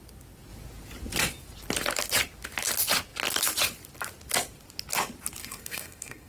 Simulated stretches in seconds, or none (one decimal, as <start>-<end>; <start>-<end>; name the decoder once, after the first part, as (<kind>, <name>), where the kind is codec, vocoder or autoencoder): 5.4-6.3 (codec, SNAC)